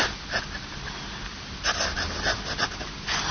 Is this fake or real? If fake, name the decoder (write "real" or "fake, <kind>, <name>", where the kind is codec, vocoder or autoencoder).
real